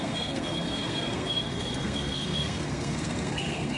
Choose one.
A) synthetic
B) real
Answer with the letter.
A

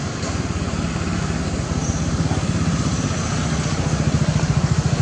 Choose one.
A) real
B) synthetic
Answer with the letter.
A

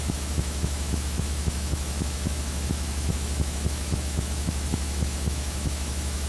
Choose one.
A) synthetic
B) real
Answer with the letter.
A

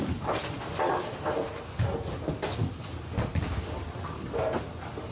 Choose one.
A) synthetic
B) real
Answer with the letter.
B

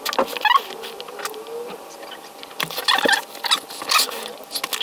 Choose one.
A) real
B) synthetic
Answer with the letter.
A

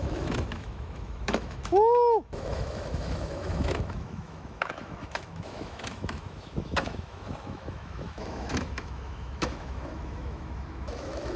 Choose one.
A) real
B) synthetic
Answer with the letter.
B